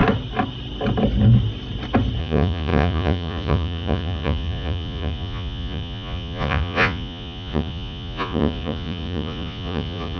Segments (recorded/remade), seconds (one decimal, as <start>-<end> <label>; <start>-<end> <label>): 0.0-2.2 recorded; 2.2-10.2 remade